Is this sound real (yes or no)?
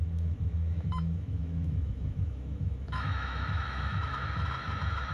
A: no